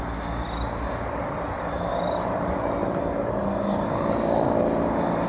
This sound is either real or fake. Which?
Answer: real